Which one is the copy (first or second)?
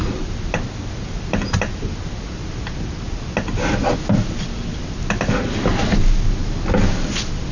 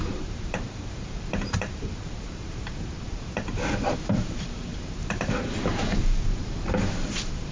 second